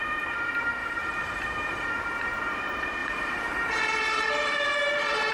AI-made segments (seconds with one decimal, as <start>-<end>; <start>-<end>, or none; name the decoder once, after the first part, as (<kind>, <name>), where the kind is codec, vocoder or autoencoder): 0.8-1.9 (vocoder, BigVGAN v2); 3.0-5.3